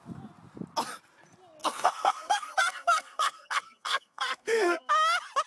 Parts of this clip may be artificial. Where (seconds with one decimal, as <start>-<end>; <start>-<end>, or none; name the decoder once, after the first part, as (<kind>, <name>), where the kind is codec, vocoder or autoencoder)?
1.6-4.9 (codec, SNAC)